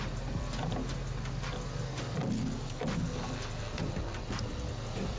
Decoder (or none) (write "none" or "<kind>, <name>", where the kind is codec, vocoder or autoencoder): none